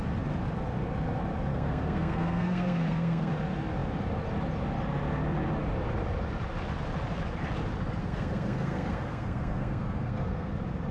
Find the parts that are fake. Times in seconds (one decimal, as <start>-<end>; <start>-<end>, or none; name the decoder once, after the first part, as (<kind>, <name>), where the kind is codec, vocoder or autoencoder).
1.5-3.3 (codec, SNAC); 8.0-10.5

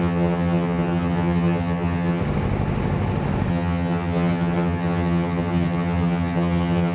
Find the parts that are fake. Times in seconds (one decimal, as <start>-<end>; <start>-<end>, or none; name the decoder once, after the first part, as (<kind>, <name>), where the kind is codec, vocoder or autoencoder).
0.0-2.2 (vocoder, HiFi-GAN); 3.5-6.9